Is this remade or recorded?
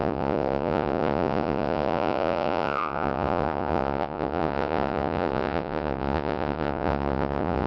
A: remade